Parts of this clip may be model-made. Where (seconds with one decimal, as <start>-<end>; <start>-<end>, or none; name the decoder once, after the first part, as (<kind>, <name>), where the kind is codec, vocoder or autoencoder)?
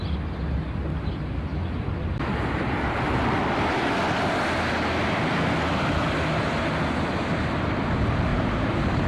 8.3-9.1 (vocoder, BigVGAN v2)